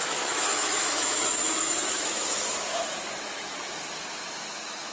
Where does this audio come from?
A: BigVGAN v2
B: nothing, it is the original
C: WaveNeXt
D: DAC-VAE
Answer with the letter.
D